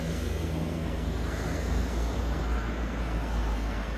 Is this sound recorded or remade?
remade